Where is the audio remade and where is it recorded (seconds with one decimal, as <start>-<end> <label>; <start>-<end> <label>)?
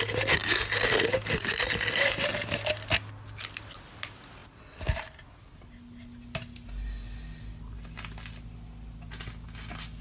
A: 0.0-10.0 recorded